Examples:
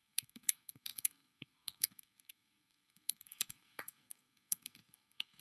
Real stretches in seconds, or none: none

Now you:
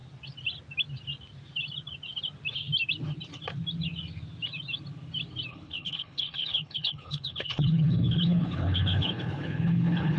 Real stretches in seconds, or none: 0.0-5.5

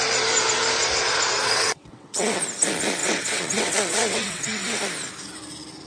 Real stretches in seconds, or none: 0.0-1.4; 2.4-3.0; 4.8-5.9

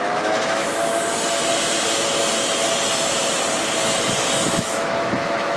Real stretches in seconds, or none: 0.9-4.3

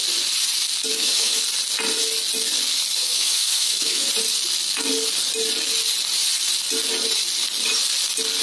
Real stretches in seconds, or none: 0.0-0.9; 1.4-3.0; 4.1-8.4

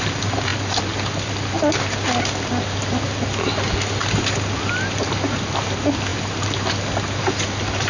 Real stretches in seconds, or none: 0.0-7.9